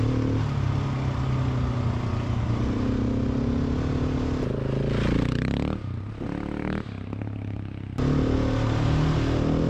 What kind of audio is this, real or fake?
real